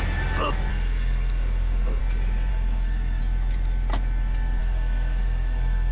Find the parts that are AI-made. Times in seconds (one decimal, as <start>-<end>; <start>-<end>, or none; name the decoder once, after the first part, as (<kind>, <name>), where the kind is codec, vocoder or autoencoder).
0.7-2.0 (codec, SNAC); 2.5-3.2; 4.6-5.9